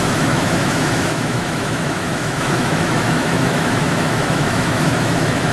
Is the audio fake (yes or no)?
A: yes